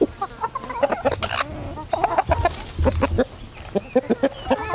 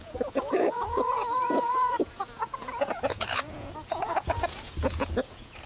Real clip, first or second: first